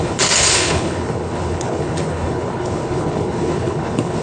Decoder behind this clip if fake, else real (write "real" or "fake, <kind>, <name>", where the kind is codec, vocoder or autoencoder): fake, codec, HILCodec